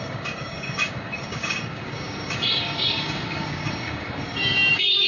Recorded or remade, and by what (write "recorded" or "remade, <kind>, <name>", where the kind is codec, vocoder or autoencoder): remade, codec, DAC